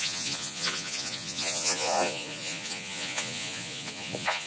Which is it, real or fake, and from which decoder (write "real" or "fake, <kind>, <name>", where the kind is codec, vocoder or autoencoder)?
fake, vocoder, Vocos